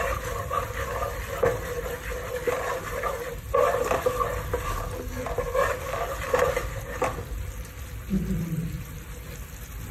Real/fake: real